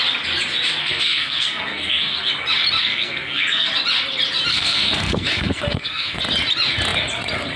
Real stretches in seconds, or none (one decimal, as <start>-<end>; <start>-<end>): 0.0-0.8; 2.3-2.8; 3.7-4.5; 6.2-7.6